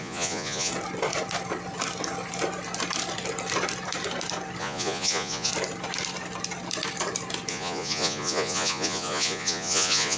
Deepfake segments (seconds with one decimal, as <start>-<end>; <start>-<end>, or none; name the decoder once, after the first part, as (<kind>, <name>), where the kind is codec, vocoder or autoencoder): 0.0-0.7 (vocoder, Vocos); 4.6-5.5; 7.5-10.2